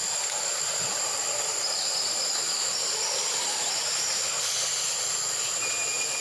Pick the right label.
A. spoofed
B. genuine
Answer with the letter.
A